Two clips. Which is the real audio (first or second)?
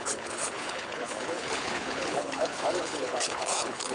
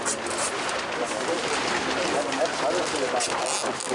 second